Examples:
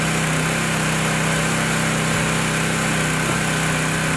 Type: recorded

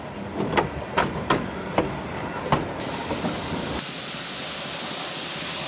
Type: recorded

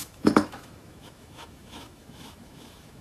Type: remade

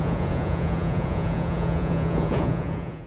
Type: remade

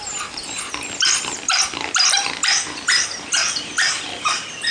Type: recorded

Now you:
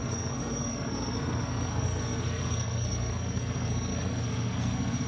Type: remade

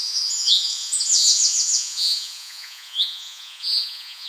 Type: remade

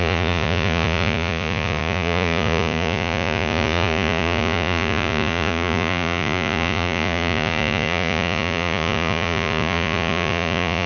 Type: remade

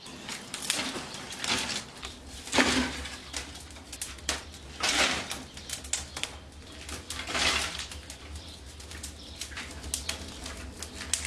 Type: recorded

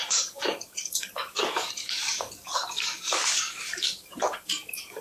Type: remade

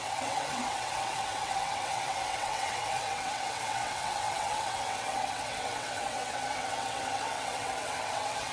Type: remade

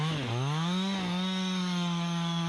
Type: remade